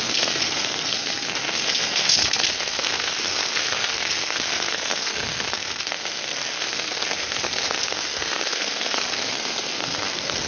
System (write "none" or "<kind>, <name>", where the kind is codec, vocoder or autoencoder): codec, SNAC